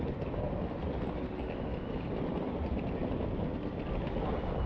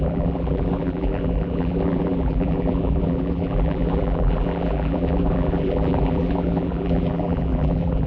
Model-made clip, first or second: second